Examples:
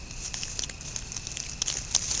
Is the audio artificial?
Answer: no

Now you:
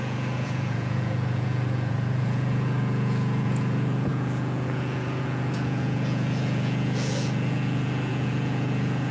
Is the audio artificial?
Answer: yes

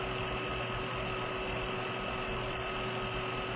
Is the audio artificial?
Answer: no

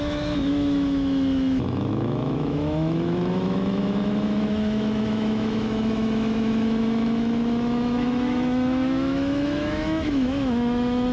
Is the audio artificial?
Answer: yes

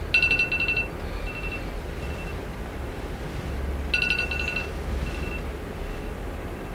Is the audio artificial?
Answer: no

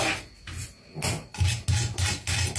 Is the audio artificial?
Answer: no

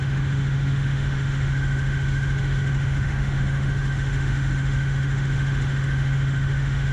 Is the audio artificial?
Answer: yes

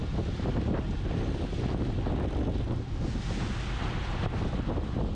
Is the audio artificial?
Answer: no